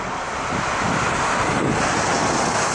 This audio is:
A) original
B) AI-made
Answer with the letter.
A